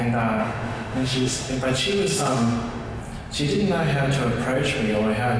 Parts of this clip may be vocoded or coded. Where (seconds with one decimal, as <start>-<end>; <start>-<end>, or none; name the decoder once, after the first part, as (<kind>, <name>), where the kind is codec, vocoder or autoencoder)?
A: 0.4-1.5 (autoencoder, DAC-VAE); 2.1-3.0